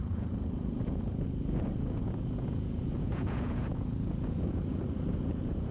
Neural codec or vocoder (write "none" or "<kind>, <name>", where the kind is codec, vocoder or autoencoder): vocoder, Vocos